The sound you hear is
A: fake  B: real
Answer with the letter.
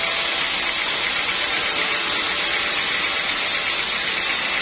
B